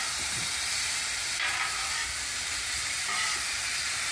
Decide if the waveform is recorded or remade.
remade